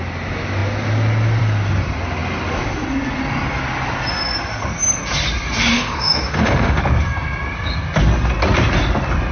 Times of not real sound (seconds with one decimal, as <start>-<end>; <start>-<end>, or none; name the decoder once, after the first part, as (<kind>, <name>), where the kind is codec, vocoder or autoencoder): 5.7-6.8 (autoencoder, DAC-VAE)